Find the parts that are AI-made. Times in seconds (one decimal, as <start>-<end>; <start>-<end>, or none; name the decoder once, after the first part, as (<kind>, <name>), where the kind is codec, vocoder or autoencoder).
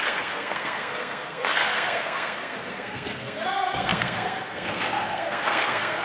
0.0-6.0 (codec, SNAC)